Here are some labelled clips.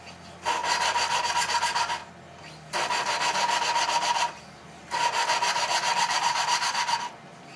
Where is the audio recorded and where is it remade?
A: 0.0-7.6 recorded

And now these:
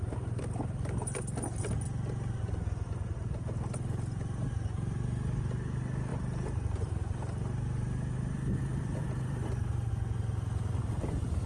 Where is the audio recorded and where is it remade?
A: 0.0-0.5 remade; 0.5-6.1 recorded; 6.1-9.9 remade; 9.9-11.5 recorded